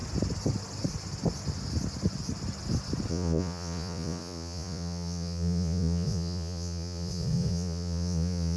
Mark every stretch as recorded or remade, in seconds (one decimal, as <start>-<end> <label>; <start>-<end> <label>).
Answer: 0.0-3.1 recorded; 3.1-8.6 remade